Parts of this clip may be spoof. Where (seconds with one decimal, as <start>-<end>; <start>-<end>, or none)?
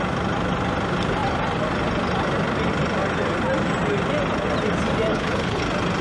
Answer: 5.1-5.6